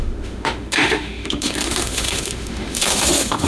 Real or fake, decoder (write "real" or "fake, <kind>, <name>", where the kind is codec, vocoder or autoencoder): fake, autoencoder, DAC-VAE